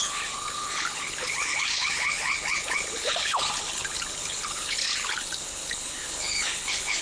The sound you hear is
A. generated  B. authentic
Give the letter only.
A